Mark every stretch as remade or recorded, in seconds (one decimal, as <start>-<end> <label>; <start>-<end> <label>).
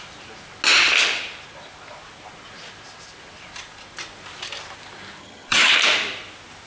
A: 0.0-5.2 recorded; 5.2-5.7 remade; 5.7-6.7 recorded